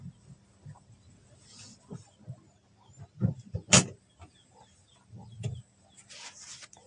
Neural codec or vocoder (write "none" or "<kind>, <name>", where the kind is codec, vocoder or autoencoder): none